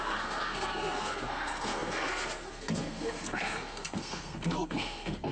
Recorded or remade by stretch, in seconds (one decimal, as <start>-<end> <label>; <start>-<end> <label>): 0.0-5.3 remade